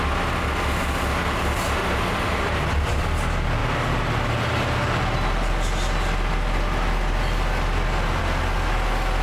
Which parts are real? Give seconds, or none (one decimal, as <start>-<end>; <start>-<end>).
0.0-1.8; 3.0-9.2